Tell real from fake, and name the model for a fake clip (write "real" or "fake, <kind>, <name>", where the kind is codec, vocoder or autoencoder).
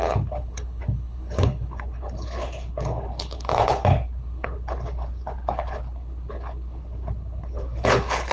fake, codec, HILCodec